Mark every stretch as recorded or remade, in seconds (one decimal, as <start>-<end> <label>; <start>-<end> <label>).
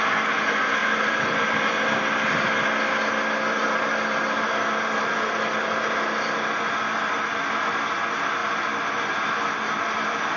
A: 0.0-0.8 recorded; 0.8-2.4 remade; 2.4-3.6 recorded; 3.6-7.2 remade; 7.2-8.4 recorded; 8.4-9.4 remade; 9.4-10.4 recorded